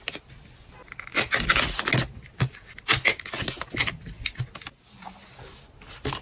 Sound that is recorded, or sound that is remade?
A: recorded